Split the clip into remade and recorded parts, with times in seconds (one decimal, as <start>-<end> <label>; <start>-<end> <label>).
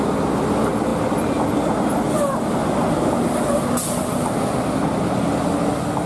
0.0-6.1 recorded